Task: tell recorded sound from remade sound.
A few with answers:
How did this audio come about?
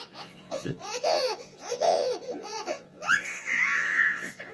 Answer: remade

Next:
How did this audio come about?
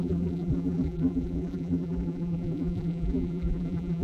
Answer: remade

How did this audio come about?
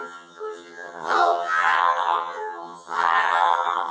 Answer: remade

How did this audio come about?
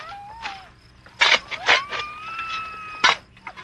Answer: recorded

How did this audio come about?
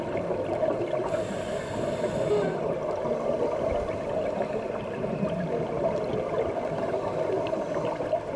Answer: recorded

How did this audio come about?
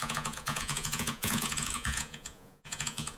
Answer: remade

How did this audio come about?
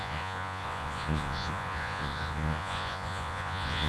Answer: remade